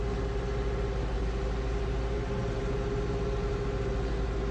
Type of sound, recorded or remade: recorded